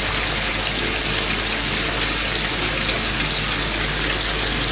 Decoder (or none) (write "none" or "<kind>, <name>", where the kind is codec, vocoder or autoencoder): none